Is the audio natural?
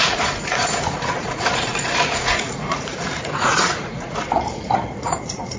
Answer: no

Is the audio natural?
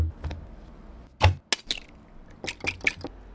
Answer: yes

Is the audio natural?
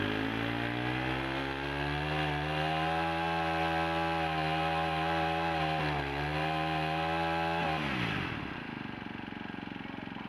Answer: yes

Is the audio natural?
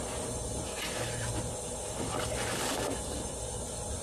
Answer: no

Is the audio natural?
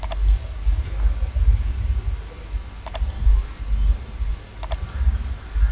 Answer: yes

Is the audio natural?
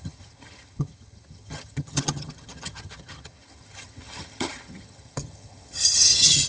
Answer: no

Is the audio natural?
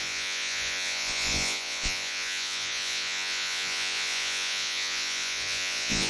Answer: no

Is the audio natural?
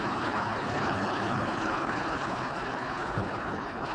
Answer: no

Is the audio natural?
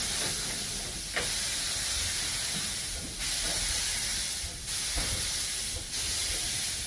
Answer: yes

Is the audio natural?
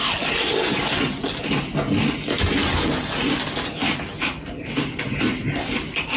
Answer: yes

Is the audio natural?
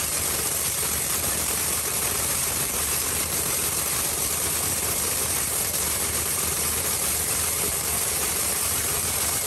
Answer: no